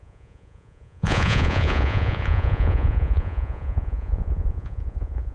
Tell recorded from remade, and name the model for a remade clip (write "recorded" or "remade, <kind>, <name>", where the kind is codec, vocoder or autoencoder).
remade, vocoder, Vocos